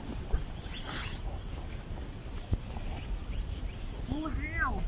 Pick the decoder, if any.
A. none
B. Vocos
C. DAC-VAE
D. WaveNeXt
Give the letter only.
A